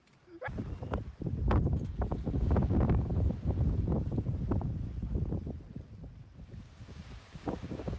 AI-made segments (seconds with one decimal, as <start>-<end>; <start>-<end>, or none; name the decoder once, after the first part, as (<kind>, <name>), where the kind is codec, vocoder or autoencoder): 2.4-3.1 (codec, DAC); 6.4-8.0